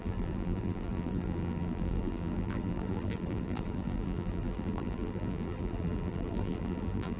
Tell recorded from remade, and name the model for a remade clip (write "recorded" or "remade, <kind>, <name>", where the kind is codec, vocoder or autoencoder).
remade, vocoder, BigVGAN v2